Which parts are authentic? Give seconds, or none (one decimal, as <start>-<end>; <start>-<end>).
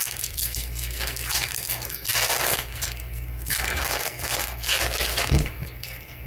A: none